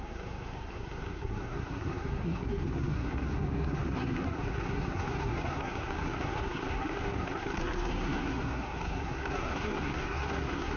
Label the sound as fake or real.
fake